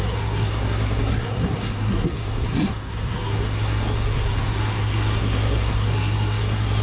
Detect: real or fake fake